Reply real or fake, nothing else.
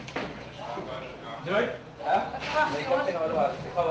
fake